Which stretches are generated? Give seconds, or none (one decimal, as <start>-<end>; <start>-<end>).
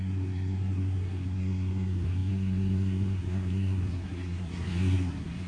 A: 0.0-5.5